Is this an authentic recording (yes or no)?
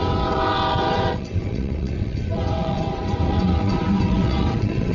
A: no